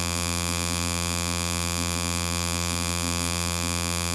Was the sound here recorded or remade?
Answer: remade